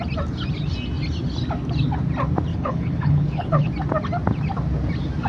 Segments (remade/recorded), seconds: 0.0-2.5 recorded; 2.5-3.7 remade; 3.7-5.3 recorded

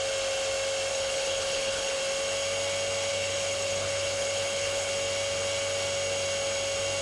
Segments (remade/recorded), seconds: 0.0-0.9 recorded; 0.9-2.0 remade; 2.0-3.1 recorded; 3.1-4.9 remade; 4.9-7.0 recorded

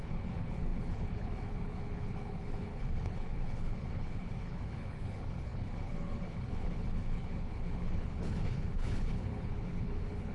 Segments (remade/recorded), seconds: 0.0-10.3 remade

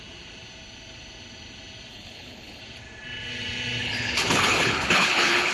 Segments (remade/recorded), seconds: 0.0-1.9 recorded; 1.9-2.6 remade; 2.6-3.8 recorded; 3.8-5.5 remade